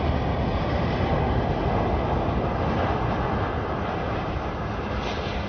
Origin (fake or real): real